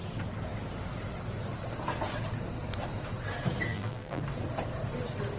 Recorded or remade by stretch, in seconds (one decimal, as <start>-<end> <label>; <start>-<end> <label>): 0.0-3.7 recorded; 3.7-4.2 remade; 4.2-5.4 recorded